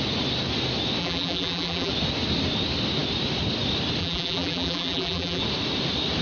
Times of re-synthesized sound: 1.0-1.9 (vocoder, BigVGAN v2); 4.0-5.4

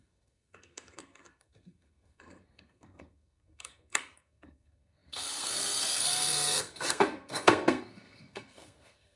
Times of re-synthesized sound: 0.0-9.2 (codec, SNAC)